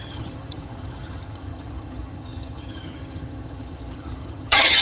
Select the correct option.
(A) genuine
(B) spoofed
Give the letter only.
B